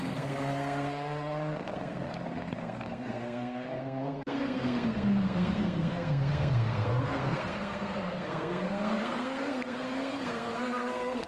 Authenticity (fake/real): fake